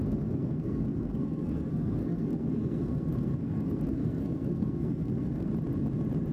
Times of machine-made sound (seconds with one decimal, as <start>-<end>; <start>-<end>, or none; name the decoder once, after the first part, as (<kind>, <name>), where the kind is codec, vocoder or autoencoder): 0.0-5.5 (codec, SNAC)